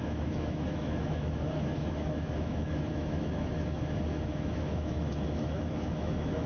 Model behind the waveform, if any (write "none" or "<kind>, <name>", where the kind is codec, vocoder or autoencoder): autoencoder, DAC-VAE